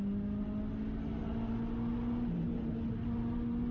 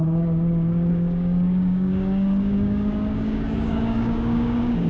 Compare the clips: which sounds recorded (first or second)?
first